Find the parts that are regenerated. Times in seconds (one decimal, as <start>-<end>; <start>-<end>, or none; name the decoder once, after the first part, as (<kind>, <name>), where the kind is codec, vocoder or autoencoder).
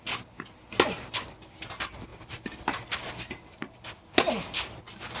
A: none